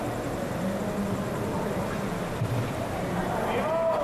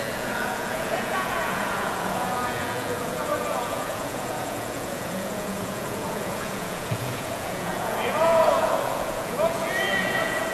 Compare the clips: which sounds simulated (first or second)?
second